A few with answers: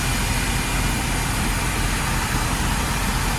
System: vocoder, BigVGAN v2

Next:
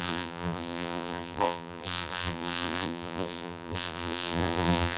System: vocoder, BigVGAN v2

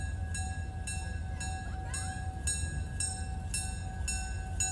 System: none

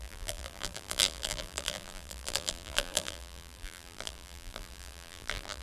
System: vocoder, BigVGAN v2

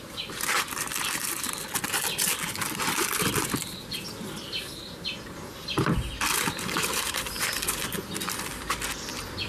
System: vocoder, BigVGAN v2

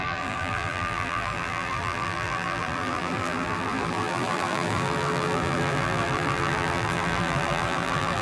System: vocoder, BigVGAN v2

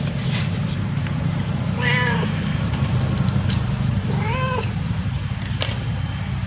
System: vocoder, BigVGAN v2